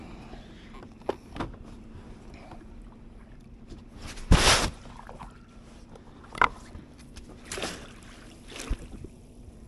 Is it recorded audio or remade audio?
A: recorded